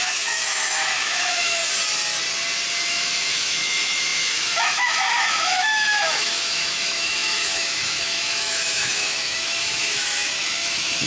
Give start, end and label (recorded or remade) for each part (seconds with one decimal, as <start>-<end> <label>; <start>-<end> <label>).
0.0-1.6 remade; 1.6-2.9 recorded; 2.9-11.1 remade